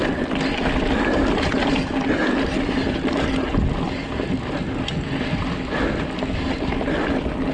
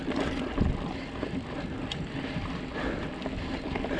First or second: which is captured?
first